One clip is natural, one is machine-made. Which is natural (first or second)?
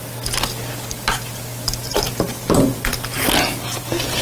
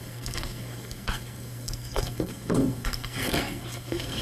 first